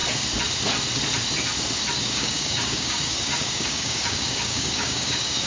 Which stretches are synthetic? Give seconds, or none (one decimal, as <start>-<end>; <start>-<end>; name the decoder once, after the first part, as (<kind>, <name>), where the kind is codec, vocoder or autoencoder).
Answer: 2.0-5.5 (codec, DAC)